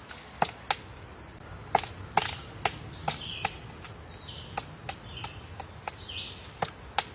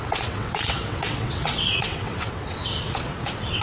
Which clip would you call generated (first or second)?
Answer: second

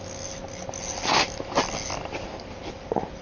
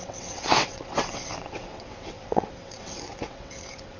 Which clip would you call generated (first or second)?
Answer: second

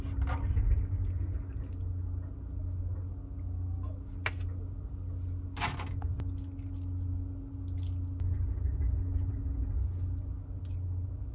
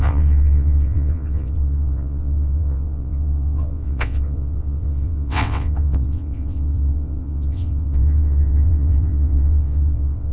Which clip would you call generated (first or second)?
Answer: second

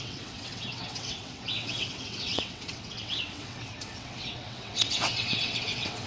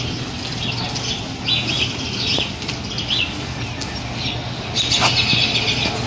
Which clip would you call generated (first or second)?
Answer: first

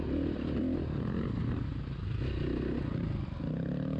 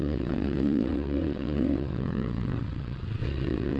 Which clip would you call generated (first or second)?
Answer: second